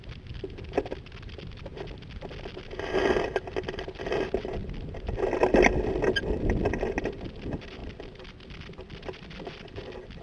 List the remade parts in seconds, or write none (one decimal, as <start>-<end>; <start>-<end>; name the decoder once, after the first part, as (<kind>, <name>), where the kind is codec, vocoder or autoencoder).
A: none